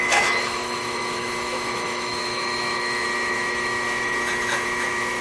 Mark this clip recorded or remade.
remade